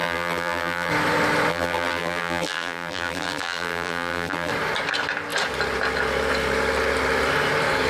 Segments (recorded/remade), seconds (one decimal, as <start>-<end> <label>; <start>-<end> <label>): 0.0-0.9 remade; 0.9-1.5 recorded; 1.5-4.5 remade; 4.5-7.9 recorded